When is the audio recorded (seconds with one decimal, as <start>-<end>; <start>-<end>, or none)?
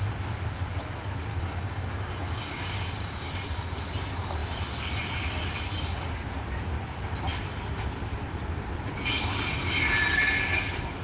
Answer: 0.0-1.3; 3.3-11.0